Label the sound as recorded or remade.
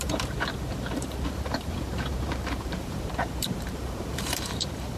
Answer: remade